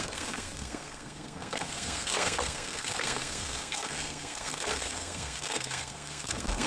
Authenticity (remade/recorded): remade